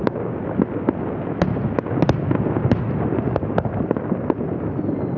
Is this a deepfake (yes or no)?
no